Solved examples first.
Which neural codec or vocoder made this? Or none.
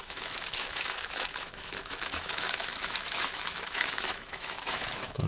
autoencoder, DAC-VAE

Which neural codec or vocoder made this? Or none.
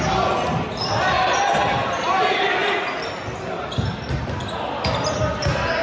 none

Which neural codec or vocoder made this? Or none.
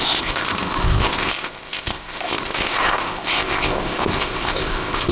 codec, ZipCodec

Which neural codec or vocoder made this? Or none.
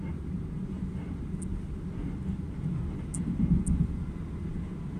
none